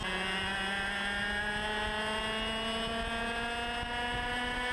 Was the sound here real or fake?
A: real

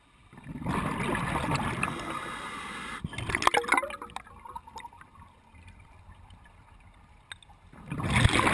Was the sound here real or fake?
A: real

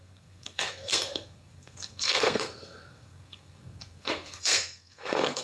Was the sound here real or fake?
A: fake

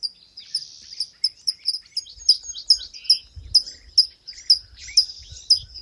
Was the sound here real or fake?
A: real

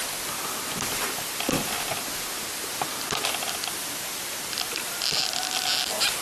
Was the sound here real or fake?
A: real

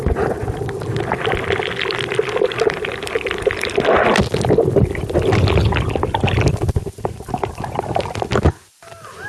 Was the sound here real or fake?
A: real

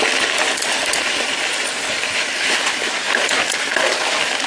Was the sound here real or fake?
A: real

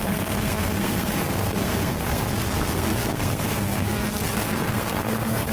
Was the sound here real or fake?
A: fake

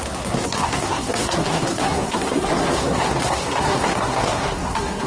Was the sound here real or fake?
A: fake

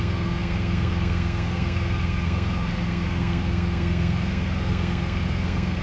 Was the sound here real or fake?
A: fake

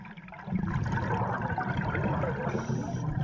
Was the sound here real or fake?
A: real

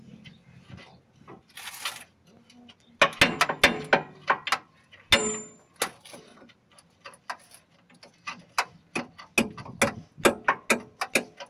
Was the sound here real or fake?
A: real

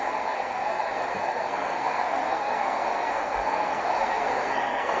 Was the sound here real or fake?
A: fake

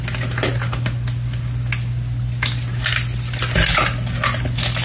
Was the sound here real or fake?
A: real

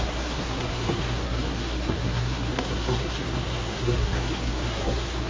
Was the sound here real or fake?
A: fake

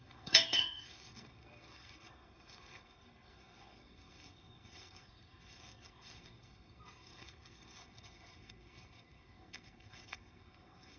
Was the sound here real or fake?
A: fake